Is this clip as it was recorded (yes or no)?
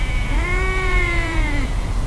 no